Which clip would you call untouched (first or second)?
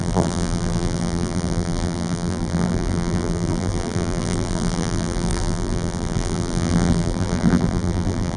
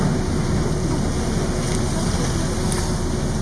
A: second